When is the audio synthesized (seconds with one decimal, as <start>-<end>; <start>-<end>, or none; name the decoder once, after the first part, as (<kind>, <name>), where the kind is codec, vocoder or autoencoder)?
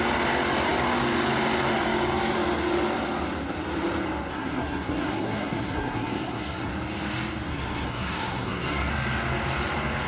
4.3-6.7 (codec, SNAC); 7.5-8.9